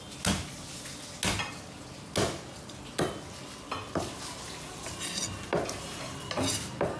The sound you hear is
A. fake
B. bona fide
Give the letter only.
B